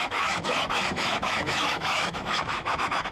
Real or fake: fake